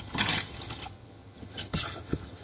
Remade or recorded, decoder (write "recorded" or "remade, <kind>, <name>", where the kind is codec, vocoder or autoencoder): remade, vocoder, HiFi-GAN